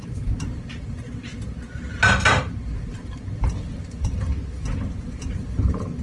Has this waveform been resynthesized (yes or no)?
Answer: no